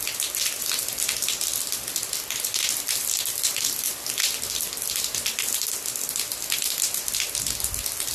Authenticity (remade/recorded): recorded